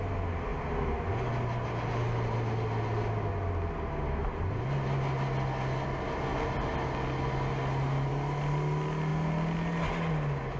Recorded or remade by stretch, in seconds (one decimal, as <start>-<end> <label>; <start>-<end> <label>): 0.0-10.6 recorded